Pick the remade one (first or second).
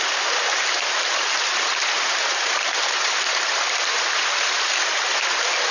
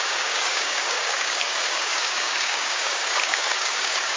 second